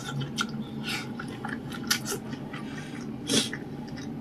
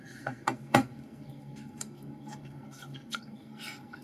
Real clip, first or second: first